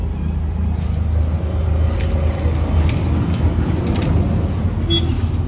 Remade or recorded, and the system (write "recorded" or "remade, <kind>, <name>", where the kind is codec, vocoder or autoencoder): recorded